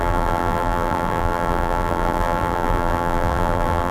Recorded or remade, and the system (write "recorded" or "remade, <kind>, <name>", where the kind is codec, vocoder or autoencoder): remade, vocoder, BigVGAN v2